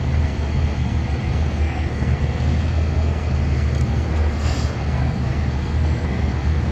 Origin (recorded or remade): remade